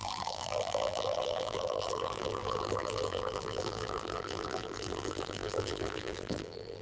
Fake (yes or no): yes